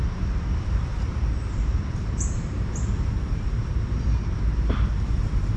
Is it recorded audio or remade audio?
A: remade